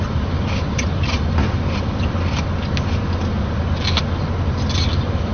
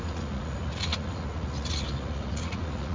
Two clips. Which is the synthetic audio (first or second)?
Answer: second